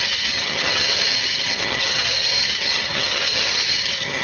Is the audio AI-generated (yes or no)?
yes